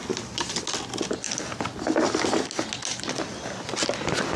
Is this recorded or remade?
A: recorded